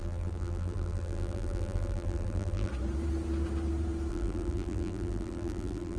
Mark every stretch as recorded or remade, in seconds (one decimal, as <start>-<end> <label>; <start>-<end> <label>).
0.0-2.7 remade; 2.7-4.1 recorded; 4.1-6.0 remade